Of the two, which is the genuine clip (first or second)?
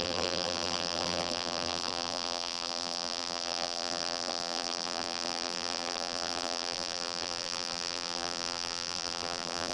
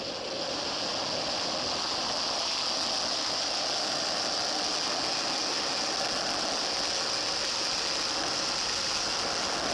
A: second